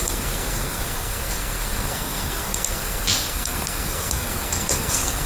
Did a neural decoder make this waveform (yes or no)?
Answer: yes